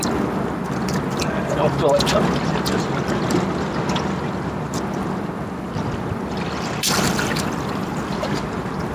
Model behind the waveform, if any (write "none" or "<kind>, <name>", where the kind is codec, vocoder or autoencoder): none